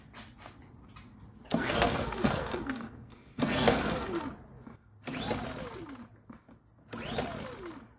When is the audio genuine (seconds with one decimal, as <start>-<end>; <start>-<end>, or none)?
0.0-1.5; 4.2-8.0